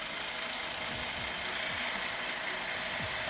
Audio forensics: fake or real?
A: real